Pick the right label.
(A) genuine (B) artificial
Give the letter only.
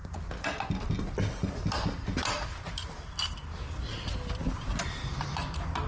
A